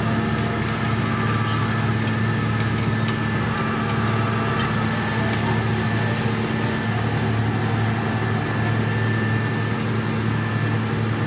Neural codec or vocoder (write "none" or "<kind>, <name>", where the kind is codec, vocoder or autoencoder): none